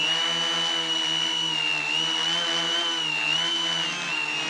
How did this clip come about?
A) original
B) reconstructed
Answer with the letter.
A